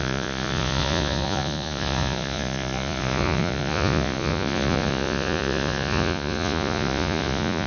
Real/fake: fake